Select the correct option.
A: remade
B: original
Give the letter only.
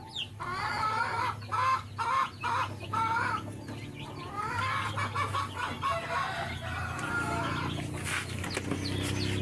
B